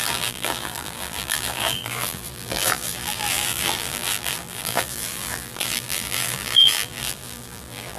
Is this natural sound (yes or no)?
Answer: no